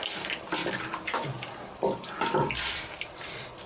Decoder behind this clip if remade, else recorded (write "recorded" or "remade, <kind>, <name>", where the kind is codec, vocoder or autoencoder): remade, vocoder, BigVGAN v2